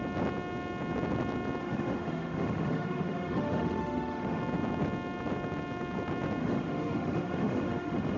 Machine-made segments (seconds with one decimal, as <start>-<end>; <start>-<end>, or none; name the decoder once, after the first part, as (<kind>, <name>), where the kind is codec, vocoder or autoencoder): 1.6-4.4 (autoencoder, DAC-VAE); 6.4-8.2